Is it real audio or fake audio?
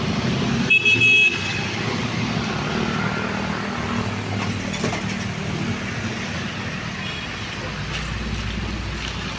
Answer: real